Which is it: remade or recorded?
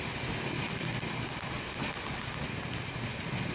recorded